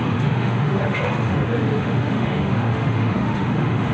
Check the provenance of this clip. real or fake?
fake